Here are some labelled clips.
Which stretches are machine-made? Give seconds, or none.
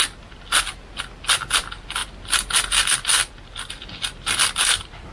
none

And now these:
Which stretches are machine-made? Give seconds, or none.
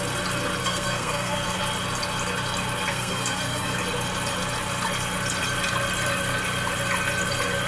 0.6-1.6; 2.9-3.8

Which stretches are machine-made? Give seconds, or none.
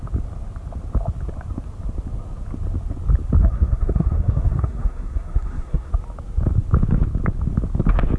3.4-5.9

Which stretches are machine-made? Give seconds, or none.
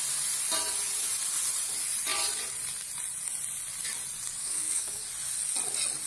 4.4-5.0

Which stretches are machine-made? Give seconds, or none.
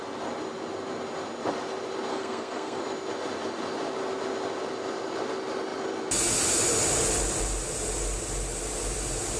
2.1-2.8